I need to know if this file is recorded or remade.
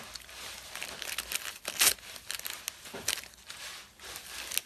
recorded